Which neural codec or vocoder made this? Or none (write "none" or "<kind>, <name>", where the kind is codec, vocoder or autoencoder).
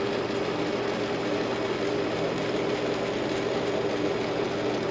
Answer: none